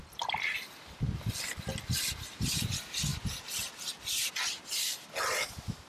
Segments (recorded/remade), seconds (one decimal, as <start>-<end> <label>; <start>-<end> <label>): 0.0-5.9 recorded